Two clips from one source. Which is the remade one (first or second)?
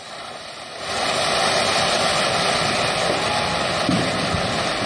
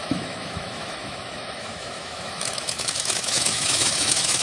second